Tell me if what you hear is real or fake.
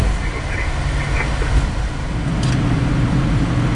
real